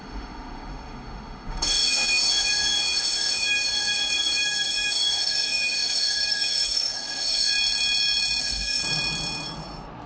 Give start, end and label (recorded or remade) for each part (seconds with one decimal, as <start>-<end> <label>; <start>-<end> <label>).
0.0-7.5 remade; 7.5-8.4 recorded; 8.4-8.8 remade; 8.8-10.1 recorded